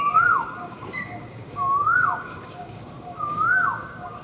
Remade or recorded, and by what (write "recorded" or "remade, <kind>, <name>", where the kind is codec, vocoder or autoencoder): remade, codec, DAC